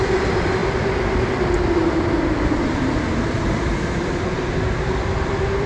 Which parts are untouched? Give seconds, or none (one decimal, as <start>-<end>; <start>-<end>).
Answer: 0.6-1.9